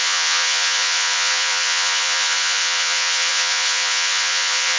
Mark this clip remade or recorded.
remade